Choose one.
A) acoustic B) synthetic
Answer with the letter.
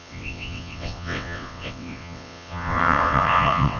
B